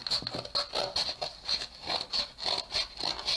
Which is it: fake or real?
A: real